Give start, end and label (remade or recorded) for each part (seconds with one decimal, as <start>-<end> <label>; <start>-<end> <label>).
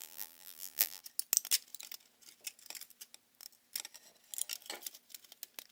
0.0-1.0 remade; 1.0-5.7 recorded